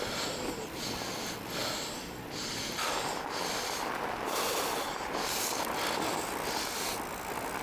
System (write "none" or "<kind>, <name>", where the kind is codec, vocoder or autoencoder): none